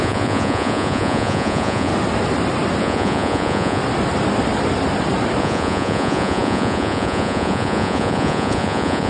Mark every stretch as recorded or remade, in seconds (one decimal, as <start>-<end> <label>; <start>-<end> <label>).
0.0-1.9 remade; 1.9-2.8 recorded; 2.8-3.8 remade; 3.8-5.4 recorded; 5.4-9.1 remade